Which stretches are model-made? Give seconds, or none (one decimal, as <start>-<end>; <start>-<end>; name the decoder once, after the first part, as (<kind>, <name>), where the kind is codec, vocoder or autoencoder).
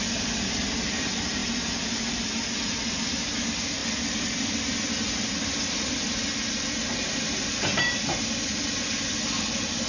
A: none